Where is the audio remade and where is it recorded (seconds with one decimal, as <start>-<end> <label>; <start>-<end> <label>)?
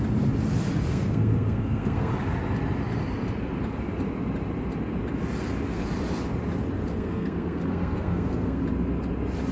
0.0-0.9 recorded; 0.9-2.1 remade; 2.1-6.9 recorded; 6.9-8.6 remade; 8.6-9.5 recorded